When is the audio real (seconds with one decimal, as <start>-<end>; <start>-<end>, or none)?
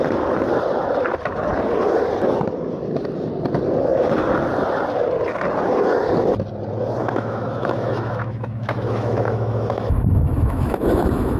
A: 0.0-7.0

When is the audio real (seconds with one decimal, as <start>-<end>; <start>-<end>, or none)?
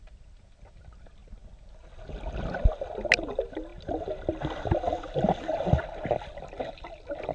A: 0.0-7.3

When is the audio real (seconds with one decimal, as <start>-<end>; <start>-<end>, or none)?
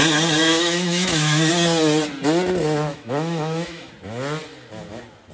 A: 0.0-0.4; 1.5-2.9; 3.9-5.3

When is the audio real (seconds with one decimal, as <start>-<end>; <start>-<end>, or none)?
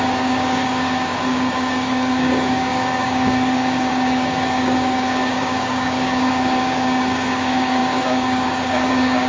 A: none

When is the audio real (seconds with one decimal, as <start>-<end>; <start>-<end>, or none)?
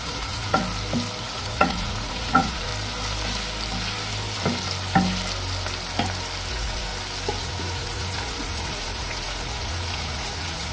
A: 0.6-1.2; 2.7-6.5; 6.9-7.4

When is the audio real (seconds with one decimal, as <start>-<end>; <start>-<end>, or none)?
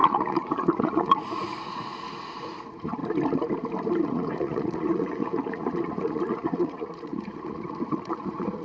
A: 3.0-4.0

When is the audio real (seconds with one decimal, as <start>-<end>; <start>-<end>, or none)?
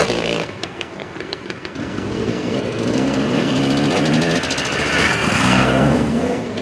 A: 3.6-5.0